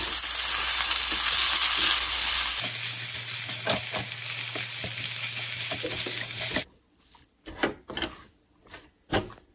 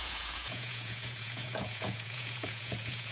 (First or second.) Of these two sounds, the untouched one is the first